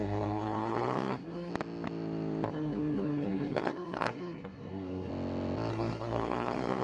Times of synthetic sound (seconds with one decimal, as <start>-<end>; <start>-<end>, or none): 0.0-1.5; 2.5-5.1; 5.7-6.8

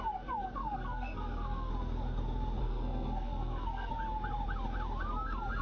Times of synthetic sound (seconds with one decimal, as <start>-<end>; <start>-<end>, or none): 0.6-1.7; 2.6-3.9